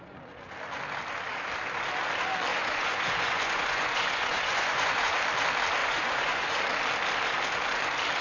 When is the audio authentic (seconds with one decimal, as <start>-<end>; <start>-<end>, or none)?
0.0-2.5; 5.2-5.8; 6.6-8.2